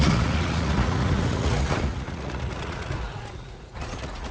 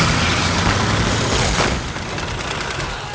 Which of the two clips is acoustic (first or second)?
second